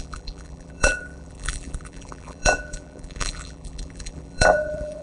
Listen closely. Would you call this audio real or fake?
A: fake